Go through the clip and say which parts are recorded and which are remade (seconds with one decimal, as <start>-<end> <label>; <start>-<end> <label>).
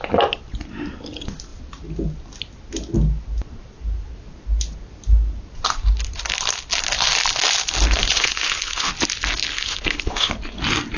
0.0-8.0 recorded; 8.0-8.9 remade; 8.9-9.5 recorded; 9.5-10.3 remade; 10.3-11.0 recorded